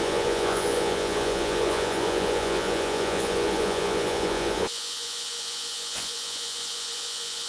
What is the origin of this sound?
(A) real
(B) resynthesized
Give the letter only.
B